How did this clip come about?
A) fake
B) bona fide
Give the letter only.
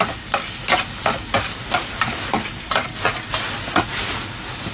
B